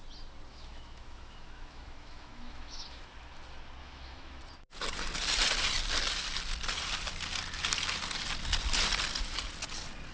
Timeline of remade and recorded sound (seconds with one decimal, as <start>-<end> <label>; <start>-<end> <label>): 0.0-0.5 recorded; 0.5-3.0 remade; 3.0-3.8 recorded; 3.8-4.4 remade; 4.4-10.1 recorded

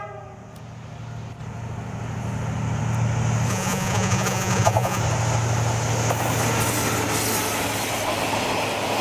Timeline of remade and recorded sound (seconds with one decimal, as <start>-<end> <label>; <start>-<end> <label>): 0.0-3.5 recorded; 3.5-5.0 remade; 5.0-9.0 recorded

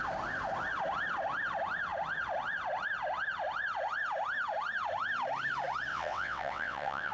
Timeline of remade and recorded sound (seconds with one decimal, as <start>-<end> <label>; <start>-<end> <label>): 0.0-5.9 recorded; 5.9-7.1 remade

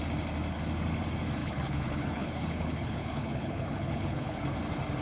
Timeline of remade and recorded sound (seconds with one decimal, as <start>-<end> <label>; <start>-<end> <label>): 0.0-1.4 recorded; 1.4-4.4 remade; 4.4-5.0 recorded

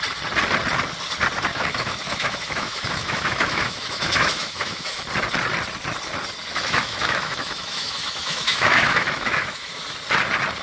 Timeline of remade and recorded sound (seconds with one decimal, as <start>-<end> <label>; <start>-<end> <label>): 0.0-1.5 recorded; 1.5-5.0 remade; 5.0-6.4 recorded; 6.4-9.7 remade; 9.7-10.6 recorded

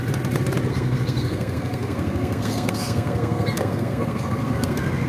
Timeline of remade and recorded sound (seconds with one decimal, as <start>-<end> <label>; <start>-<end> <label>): 0.0-0.7 recorded; 0.7-5.1 remade

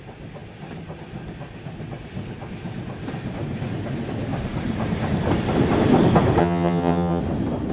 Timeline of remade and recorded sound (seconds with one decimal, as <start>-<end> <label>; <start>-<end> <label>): 0.0-6.4 recorded; 6.4-7.2 remade; 7.2-7.7 recorded

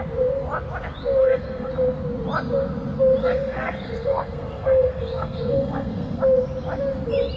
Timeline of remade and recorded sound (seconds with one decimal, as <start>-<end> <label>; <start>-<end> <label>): 0.0-1.2 recorded; 1.2-1.7 remade; 1.7-3.2 recorded; 3.2-6.2 remade; 6.2-7.4 recorded